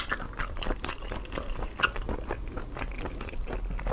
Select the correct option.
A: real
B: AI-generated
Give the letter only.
A